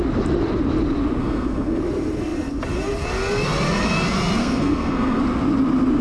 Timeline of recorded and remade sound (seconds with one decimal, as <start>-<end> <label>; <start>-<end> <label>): 0.0-1.2 recorded; 1.2-1.8 remade; 1.8-4.4 recorded; 4.4-5.2 remade; 5.2-6.0 recorded